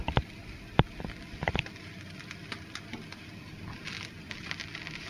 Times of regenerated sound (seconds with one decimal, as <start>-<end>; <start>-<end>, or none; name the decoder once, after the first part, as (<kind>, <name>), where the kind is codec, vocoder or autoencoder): 1.2-3.5 (vocoder, BigVGAN v2); 4.4-5.1